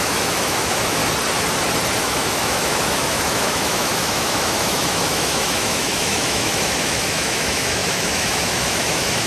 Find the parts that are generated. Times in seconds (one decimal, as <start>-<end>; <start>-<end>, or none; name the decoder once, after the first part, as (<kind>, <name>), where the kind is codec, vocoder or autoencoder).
0.0-1.0 (autoencoder, DAC-VAE); 2.0-9.3